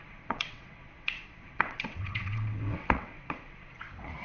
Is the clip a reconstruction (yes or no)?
yes